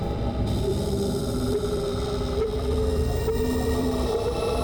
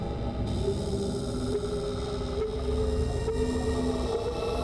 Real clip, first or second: second